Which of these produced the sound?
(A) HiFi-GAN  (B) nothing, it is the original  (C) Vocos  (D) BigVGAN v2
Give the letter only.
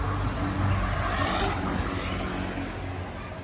B